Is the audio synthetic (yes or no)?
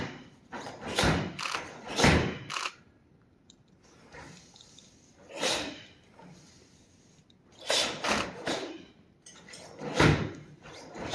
no